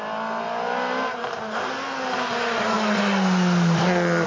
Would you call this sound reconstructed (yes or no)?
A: no